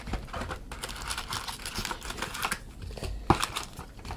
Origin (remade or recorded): recorded